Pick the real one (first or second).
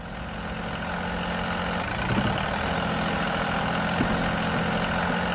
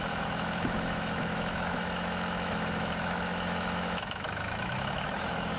first